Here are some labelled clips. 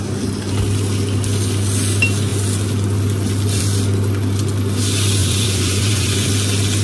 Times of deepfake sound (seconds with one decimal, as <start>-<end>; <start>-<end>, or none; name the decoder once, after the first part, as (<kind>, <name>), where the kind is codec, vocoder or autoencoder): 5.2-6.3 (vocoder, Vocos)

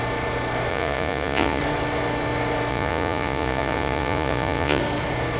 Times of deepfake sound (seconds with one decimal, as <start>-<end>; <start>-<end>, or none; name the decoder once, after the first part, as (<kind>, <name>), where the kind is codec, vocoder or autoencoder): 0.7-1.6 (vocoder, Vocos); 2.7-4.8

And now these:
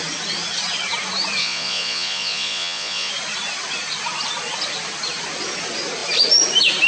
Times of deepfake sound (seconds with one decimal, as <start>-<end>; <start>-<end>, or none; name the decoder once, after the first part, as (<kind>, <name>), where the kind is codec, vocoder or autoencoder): 1.4-3.1 (vocoder, Vocos)